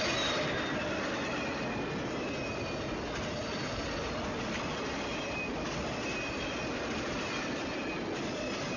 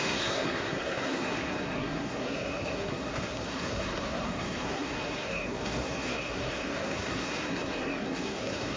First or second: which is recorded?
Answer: first